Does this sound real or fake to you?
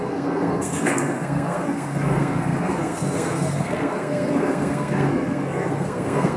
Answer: fake